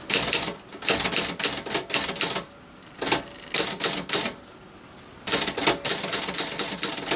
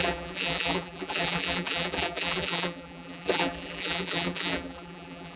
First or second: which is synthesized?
second